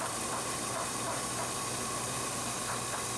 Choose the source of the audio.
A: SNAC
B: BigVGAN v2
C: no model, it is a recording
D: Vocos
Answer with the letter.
C